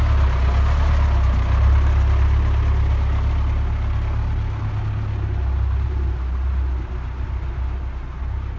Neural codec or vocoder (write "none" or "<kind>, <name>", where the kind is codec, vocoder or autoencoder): none